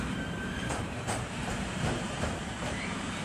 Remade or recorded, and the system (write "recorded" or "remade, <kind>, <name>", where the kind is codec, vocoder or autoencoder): remade, vocoder, BigVGAN v2